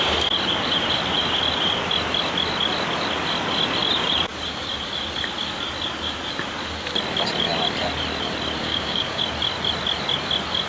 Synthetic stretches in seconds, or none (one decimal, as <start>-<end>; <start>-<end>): 8.6-9.2